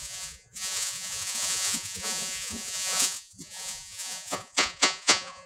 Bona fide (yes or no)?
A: no